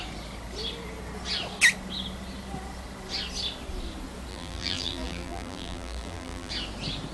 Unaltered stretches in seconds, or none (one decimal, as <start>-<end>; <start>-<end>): 0.0-4.3; 6.5-7.1